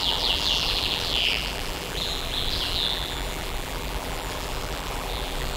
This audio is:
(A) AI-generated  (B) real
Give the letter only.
A